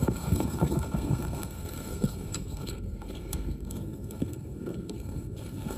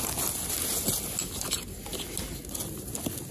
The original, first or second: second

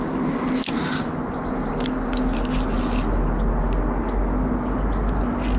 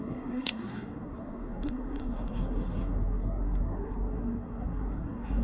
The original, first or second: first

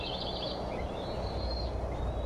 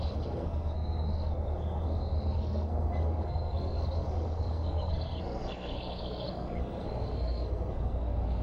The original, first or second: first